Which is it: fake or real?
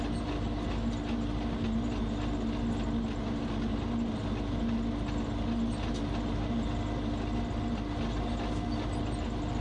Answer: real